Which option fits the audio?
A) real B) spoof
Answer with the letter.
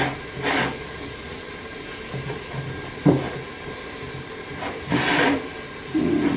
A